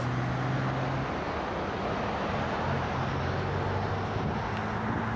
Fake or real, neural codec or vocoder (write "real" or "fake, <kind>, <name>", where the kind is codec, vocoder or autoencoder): real